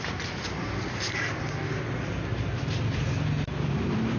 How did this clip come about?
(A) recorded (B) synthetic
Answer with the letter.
A